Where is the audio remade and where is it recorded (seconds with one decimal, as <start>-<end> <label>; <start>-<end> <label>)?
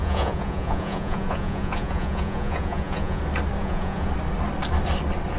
0.0-3.2 remade; 3.2-3.6 recorded; 3.6-4.1 remade; 4.1-5.4 recorded